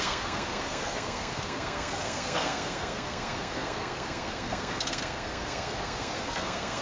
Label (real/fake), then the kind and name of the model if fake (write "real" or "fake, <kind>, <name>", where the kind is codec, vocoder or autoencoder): fake, codec, SNAC